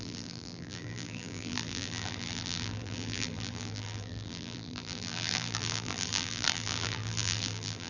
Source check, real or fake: fake